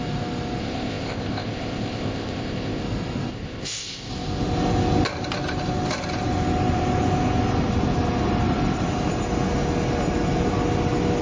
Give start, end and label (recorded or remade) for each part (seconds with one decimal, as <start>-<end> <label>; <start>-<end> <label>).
0.0-0.6 recorded; 0.6-2.8 remade; 2.8-3.3 recorded; 3.3-4.1 remade; 4.1-11.2 recorded